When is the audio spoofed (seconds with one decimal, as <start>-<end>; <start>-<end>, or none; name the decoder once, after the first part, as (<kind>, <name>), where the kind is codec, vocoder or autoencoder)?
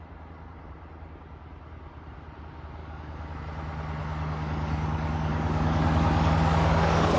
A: 2.8-3.4 (codec, DAC); 4.0-7.2